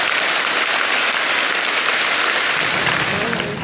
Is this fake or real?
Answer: real